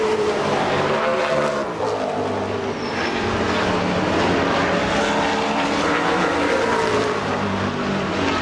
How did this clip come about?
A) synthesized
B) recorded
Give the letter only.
B